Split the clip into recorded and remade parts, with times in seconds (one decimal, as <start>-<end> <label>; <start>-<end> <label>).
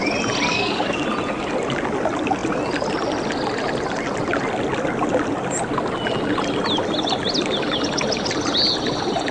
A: 0.0-0.5 recorded; 0.5-1.0 remade; 1.0-9.3 recorded